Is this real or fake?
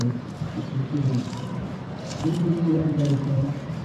fake